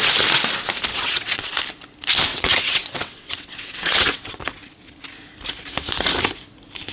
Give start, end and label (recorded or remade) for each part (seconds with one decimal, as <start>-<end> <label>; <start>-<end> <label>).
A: 0.0-0.9 recorded; 0.9-1.6 remade; 1.6-2.3 recorded; 2.3-4.5 remade; 4.5-6.9 recorded